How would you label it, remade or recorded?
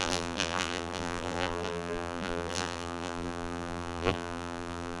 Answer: remade